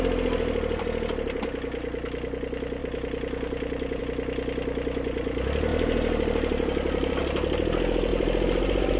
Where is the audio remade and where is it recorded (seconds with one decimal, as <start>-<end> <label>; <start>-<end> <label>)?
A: 0.0-2.8 recorded; 2.8-4.0 remade; 4.0-5.7 recorded; 5.7-7.1 remade; 7.1-8.1 recorded; 8.1-9.0 remade